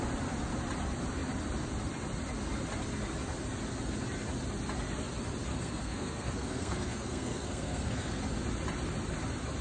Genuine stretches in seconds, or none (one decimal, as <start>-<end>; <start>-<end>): 0.0-5.5; 8.2-9.6